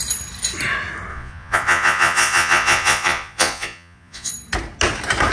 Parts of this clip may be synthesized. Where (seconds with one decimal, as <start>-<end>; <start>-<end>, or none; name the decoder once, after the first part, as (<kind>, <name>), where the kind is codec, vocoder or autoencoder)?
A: 1.1-4.3 (vocoder, Vocos)